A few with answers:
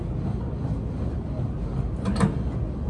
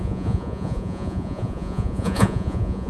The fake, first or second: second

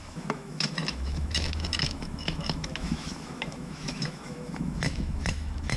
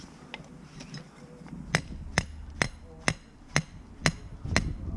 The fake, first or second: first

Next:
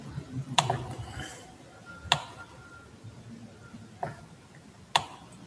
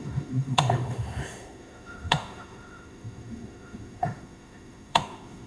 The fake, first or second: second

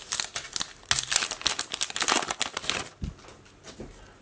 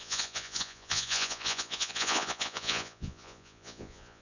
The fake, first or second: second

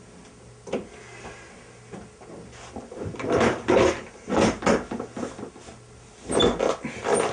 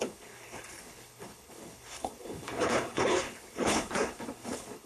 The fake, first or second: second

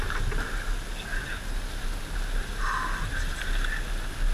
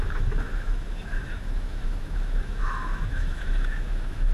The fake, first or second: second